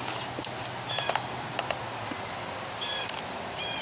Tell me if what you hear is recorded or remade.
recorded